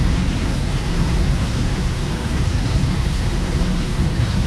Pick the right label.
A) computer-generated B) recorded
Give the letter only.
A